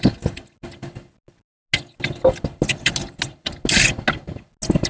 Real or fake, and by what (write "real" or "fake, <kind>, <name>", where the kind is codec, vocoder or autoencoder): real